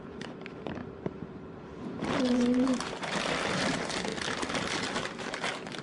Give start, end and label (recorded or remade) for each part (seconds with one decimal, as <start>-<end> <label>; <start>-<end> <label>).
0.0-4.1 remade; 4.1-4.8 recorded; 4.8-5.8 remade

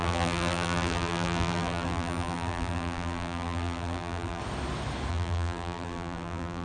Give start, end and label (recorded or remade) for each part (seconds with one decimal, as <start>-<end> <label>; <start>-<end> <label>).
0.0-4.4 remade; 4.4-5.1 recorded; 5.1-6.6 remade

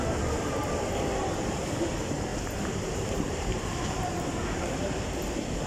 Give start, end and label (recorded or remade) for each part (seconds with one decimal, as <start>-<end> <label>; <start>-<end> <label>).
0.0-2.3 recorded; 2.3-3.6 remade; 3.6-5.7 recorded

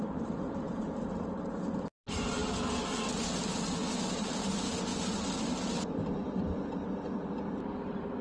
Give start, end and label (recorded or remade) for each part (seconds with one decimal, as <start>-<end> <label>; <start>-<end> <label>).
0.0-4.9 remade; 4.9-8.2 recorded

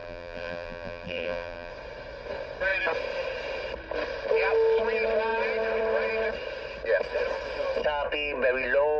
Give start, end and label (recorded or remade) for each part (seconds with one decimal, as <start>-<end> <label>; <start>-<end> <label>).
0.0-1.7 remade; 1.7-9.0 recorded

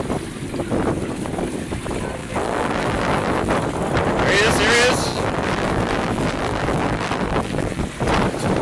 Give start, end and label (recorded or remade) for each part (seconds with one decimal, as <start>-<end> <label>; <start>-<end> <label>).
0.0-2.2 recorded; 2.2-3.5 remade; 3.5-5.1 recorded; 5.1-7.8 remade; 7.8-8.6 recorded

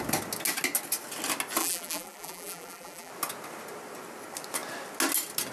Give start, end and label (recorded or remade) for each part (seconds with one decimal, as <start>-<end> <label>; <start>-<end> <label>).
0.0-1.6 recorded; 1.6-3.1 remade; 3.1-5.5 recorded